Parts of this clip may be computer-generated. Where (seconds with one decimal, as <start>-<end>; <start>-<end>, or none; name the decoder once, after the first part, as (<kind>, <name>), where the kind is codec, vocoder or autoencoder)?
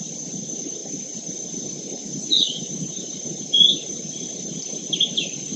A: 0.0-0.8 (vocoder, BigVGAN v2); 3.9-5.6